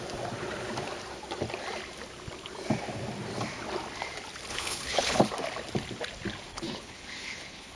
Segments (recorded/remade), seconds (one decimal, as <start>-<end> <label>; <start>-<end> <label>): 0.0-4.5 recorded; 4.5-5.2 remade; 5.2-6.5 recorded; 6.5-7.8 remade